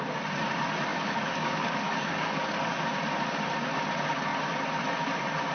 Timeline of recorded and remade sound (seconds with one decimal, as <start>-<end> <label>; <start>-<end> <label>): 0.0-0.9 recorded; 0.9-2.8 remade; 2.8-5.5 recorded